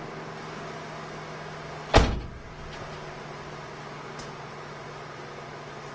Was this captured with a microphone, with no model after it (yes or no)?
yes